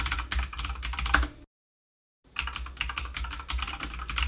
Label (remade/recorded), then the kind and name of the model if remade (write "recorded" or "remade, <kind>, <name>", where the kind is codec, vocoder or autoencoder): recorded